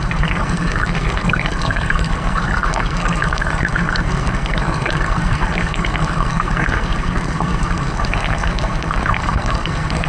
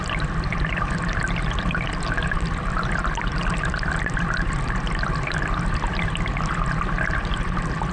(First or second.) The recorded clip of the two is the second